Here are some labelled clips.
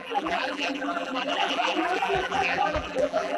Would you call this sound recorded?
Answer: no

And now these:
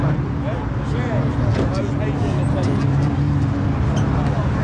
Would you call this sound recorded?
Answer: yes